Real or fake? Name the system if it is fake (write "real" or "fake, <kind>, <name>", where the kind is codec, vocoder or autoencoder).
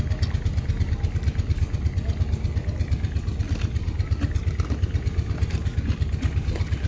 real